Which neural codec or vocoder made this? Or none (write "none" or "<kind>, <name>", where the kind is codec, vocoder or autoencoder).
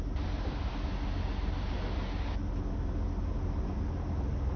none